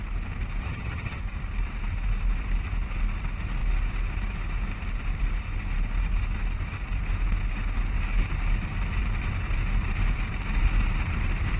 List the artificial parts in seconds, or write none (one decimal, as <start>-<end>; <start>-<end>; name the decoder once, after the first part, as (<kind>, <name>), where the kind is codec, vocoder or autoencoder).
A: 0.6-1.2 (vocoder, HiFi-GAN)